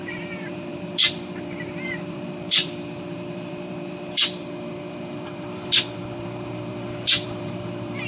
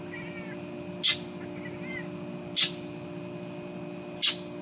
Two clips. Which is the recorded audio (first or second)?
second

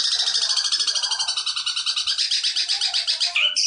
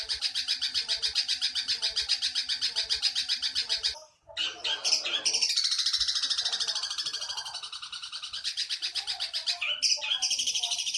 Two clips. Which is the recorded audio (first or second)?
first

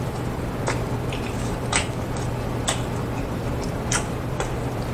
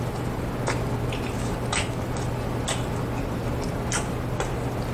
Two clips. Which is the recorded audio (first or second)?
second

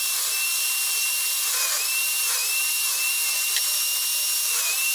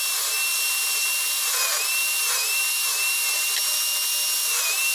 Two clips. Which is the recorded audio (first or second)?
second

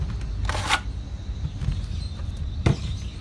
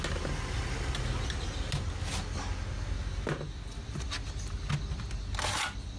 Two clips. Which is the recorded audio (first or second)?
second